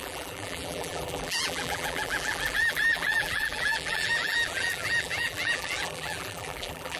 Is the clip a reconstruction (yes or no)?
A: yes